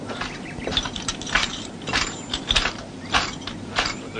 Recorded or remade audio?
remade